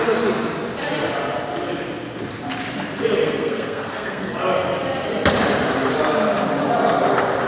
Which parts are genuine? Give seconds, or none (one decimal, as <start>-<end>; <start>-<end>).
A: 0.0-3.2; 4.4-7.5